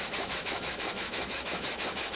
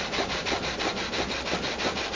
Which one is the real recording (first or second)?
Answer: second